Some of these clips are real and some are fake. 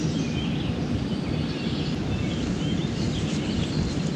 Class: real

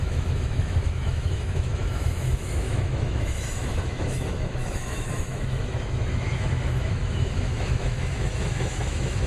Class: fake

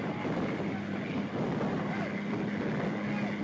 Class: real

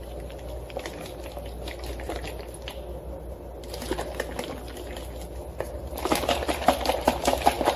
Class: real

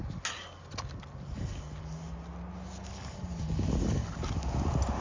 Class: real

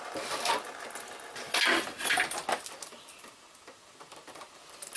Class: real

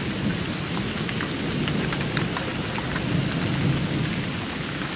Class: real